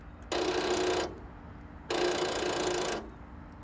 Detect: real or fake real